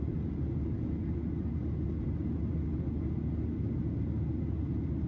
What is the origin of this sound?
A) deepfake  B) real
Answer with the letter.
B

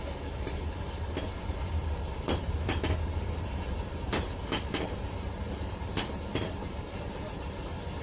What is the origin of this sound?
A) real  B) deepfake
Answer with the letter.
B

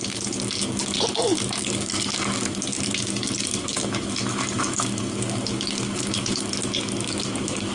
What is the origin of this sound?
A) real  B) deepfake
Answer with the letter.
B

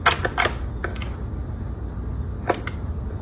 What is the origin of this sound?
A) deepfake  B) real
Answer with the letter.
B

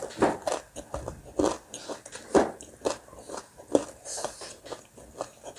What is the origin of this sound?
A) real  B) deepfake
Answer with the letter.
A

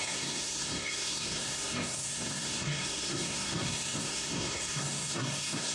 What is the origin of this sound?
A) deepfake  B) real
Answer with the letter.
A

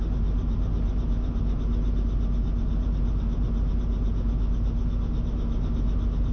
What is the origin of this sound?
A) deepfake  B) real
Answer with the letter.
B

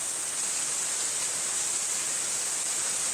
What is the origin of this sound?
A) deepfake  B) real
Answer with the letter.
B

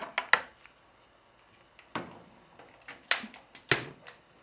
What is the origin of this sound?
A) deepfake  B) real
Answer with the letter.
B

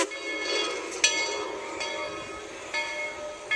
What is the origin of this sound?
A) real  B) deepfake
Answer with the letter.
A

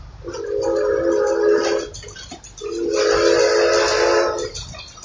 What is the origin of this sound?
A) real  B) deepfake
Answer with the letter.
A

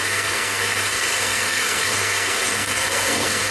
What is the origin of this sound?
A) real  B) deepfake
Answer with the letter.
B